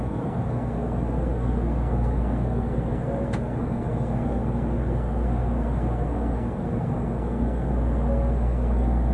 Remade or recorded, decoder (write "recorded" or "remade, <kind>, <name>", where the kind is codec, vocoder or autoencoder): remade, codec, SNAC